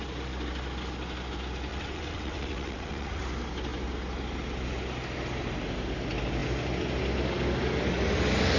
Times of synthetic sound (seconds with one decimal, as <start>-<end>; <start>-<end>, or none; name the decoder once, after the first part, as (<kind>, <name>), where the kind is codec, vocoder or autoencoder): 1.7-3.2 (vocoder, WaveNeXt)